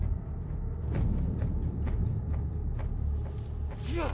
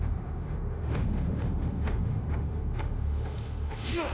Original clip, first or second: first